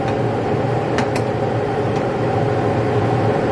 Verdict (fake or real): real